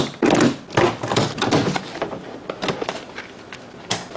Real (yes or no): yes